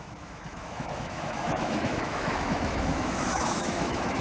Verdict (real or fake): fake